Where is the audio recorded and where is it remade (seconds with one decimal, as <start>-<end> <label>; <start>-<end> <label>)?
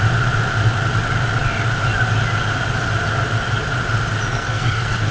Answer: 0.0-4.3 recorded; 4.3-5.1 remade